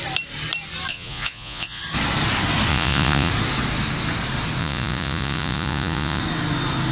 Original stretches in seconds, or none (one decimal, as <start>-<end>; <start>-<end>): 0.0-0.9; 1.8-2.7; 3.3-4.6; 6.2-6.9